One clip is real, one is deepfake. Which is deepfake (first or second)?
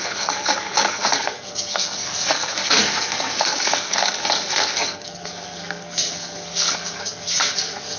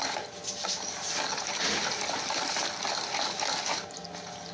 first